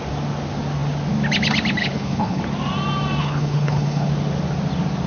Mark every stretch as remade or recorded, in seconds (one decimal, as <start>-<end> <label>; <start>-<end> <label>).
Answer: 0.0-1.8 recorded; 1.8-2.4 remade; 2.4-3.2 recorded; 3.2-4.1 remade; 4.1-5.1 recorded